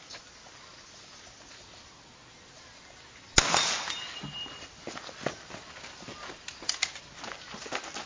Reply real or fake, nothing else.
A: real